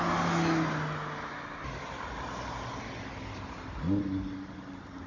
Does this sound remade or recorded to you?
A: recorded